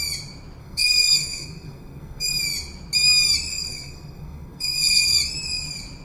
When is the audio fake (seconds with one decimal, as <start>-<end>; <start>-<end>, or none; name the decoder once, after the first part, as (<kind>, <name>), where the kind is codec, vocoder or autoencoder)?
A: 0.6-2.3 (codec, SNAC); 3.5-5.2